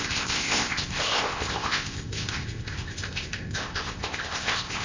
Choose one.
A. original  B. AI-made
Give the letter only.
B